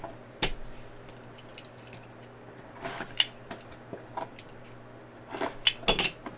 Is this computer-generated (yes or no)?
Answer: no